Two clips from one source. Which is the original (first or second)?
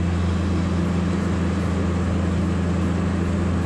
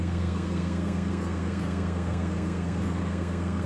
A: first